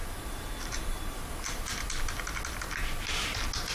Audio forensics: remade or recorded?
recorded